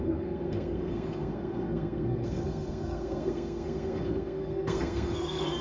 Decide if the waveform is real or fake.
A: fake